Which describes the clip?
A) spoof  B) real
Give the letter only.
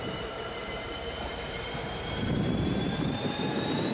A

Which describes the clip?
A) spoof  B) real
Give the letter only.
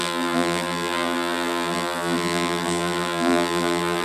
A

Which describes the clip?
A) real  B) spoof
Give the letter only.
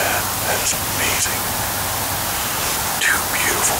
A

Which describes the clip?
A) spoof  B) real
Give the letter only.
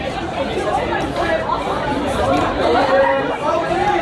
A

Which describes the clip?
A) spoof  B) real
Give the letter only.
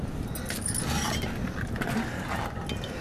B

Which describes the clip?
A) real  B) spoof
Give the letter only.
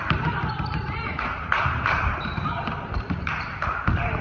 B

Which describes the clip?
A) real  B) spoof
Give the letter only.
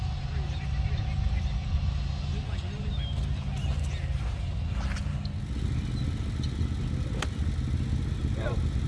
A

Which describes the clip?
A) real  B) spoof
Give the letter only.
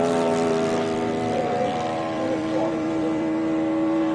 B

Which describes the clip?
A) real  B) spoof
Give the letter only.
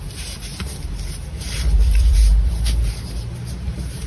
B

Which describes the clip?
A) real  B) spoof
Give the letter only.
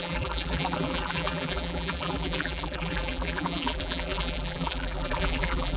B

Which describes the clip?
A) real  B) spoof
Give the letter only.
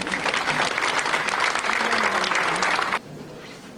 A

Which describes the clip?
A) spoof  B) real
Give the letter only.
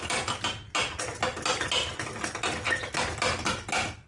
B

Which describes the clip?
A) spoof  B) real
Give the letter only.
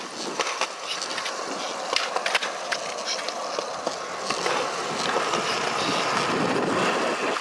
B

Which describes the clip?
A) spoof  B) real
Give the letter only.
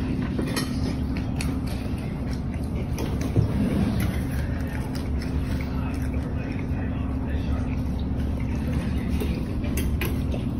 A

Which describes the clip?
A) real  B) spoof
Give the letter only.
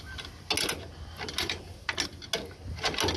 A